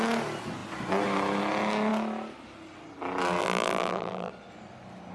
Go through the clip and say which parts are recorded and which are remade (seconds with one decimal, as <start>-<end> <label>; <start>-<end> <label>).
0.0-3.4 recorded; 3.4-4.3 remade; 4.3-5.1 recorded